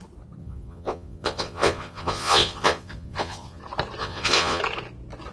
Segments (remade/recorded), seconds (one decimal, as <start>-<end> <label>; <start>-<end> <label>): 0.0-0.4 recorded; 0.4-3.6 remade; 3.6-4.0 recorded; 4.0-4.6 remade; 4.6-5.3 recorded